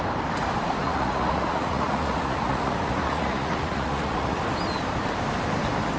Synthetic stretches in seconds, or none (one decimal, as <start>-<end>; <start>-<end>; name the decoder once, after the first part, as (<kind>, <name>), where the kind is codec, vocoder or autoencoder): 0.8-4.4 (vocoder, Vocos)